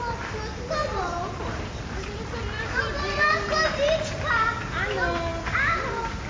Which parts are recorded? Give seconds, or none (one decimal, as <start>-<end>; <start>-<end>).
0.0-0.8; 1.3-2.4; 4.5-6.3